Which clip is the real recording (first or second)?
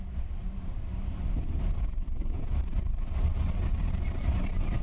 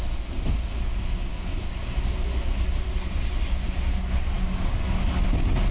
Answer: second